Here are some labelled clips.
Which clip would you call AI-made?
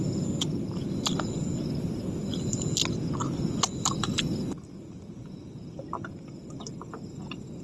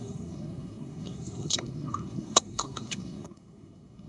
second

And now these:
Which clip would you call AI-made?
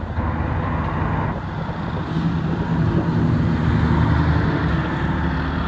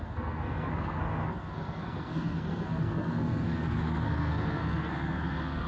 second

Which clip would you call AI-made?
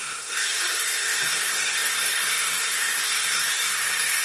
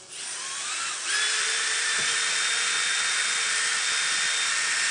first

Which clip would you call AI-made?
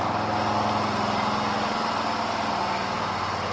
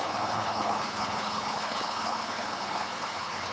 second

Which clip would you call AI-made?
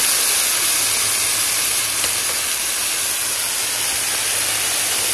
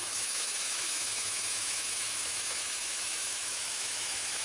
second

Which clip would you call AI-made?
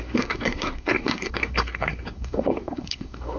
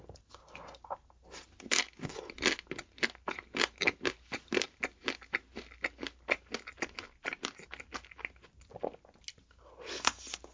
first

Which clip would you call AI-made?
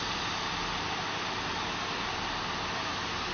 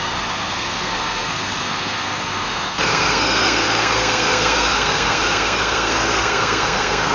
second